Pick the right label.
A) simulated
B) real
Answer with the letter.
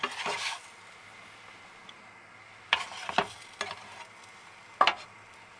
B